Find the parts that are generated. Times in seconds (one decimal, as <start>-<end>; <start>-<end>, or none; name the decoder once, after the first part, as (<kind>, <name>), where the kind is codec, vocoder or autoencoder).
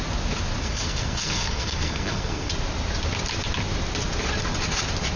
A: 0.6-2.5 (codec, SNAC)